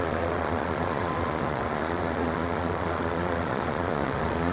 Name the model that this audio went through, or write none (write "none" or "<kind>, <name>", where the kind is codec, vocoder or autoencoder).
vocoder, Vocos